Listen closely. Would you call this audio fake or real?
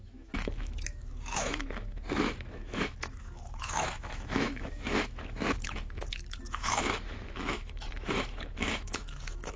fake